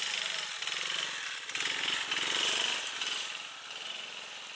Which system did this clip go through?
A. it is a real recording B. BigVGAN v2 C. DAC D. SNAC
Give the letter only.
B